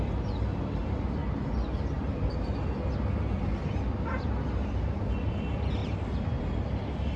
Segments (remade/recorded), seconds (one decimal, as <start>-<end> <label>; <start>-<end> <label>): 0.0-7.2 recorded

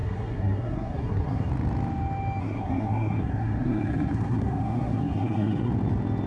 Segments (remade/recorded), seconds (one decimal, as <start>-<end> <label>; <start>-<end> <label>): 0.0-1.5 remade; 1.5-2.4 recorded; 2.4-5.7 remade; 5.7-6.3 recorded